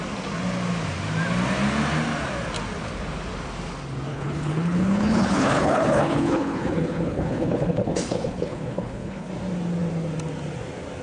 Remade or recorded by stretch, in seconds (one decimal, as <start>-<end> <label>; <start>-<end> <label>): 0.0-4.1 recorded; 4.1-9.3 remade; 9.3-11.0 recorded